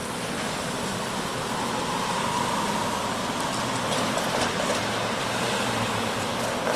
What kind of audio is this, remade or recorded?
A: recorded